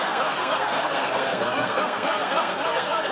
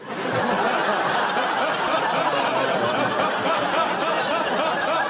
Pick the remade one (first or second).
first